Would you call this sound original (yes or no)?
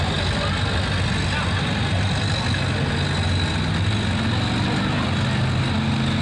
yes